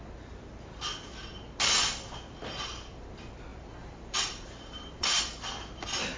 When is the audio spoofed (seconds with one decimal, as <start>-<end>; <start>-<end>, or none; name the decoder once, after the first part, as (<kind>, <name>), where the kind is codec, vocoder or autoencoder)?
3.5-5.2 (vocoder, BigVGAN v2)